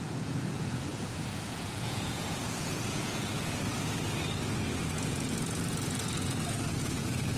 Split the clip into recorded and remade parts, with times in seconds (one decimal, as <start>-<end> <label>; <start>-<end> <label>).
0.0-3.7 remade; 3.7-4.8 recorded; 4.8-7.4 remade